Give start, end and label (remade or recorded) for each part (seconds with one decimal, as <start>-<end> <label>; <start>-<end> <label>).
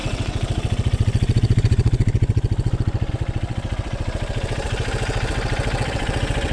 0.0-6.5 remade